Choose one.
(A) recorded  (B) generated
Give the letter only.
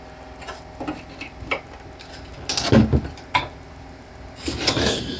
A